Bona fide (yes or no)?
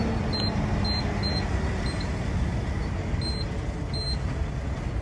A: yes